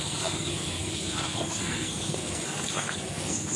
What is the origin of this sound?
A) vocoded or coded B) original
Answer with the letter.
A